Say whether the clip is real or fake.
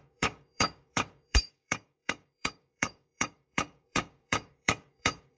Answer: fake